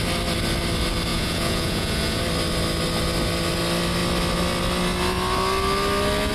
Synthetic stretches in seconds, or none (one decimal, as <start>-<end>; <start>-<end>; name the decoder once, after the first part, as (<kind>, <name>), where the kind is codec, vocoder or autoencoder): 1.1-2.2 (vocoder, Vocos)